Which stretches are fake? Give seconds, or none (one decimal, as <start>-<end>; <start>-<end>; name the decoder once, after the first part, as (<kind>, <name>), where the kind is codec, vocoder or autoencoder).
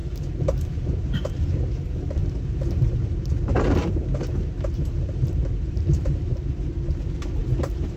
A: 0.0-1.3 (vocoder, BigVGAN v2); 2.2-6.7; 7.4-8.0